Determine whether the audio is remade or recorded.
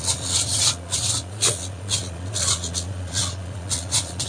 remade